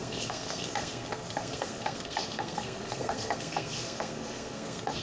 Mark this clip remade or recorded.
remade